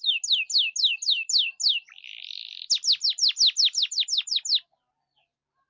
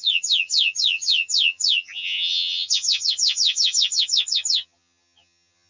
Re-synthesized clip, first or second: second